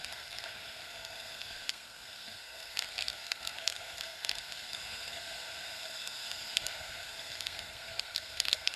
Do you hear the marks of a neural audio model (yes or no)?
yes